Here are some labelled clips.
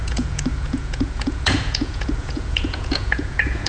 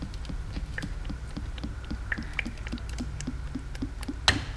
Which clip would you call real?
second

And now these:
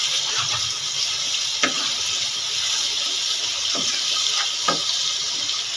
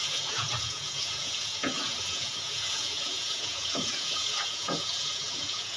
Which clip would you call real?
first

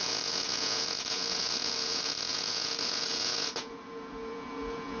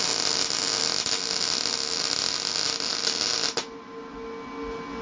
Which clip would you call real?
second